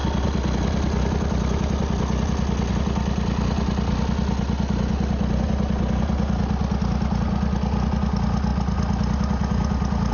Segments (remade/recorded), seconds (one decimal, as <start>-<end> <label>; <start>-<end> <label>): 0.0-10.1 recorded